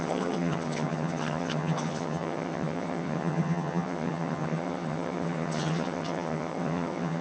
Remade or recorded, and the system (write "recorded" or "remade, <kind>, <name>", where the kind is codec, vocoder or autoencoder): remade, vocoder, HiFi-GAN